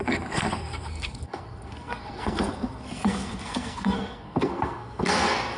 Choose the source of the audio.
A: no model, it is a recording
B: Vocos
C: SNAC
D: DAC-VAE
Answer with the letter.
C